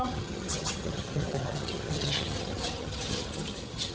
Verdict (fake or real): fake